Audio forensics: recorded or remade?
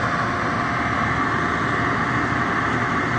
recorded